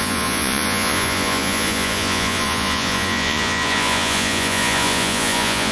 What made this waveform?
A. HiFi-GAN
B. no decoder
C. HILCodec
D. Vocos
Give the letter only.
D